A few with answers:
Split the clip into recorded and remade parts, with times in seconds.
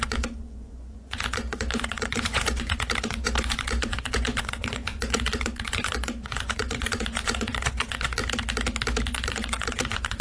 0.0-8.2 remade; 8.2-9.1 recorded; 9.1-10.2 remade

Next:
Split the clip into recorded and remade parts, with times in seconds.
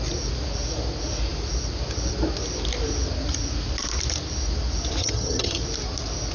0.0-5.0 recorded; 5.0-5.6 remade; 5.6-6.3 recorded